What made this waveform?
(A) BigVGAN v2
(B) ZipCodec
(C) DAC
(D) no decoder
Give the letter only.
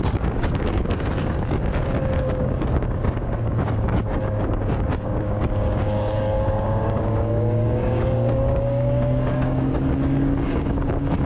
C